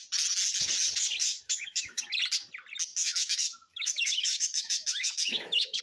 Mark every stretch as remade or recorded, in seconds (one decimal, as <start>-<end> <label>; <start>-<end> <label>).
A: 0.0-1.2 recorded; 1.2-2.0 remade; 2.0-2.9 recorded; 2.9-5.8 remade